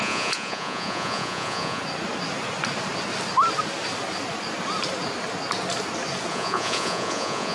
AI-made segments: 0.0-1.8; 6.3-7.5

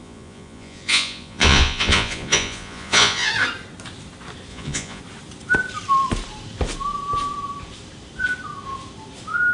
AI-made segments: 0.0-3.3; 4.5-5.0

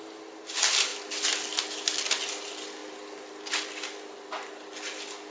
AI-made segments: none

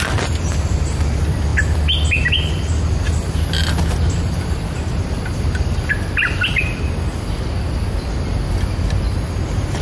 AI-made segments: none

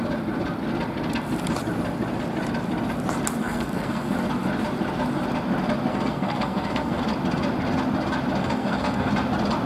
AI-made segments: 3.4-4.1; 5.9-7.0; 8.4-9.1

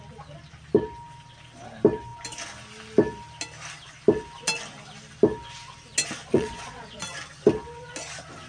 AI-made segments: 6.3-7.0